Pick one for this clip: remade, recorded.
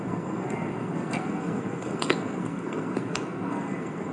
remade